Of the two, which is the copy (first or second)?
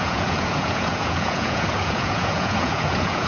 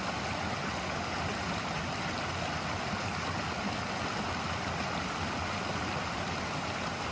first